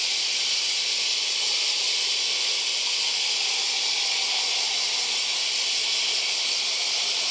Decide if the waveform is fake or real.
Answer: real